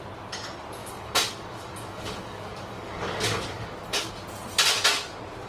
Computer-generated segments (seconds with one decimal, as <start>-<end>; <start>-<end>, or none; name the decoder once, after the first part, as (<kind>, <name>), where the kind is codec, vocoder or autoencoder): 0.8-4.1 (codec, DAC)